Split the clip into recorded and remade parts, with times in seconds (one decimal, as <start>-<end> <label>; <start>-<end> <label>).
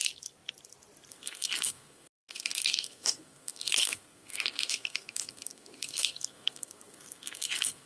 0.0-1.1 recorded; 1.1-7.9 remade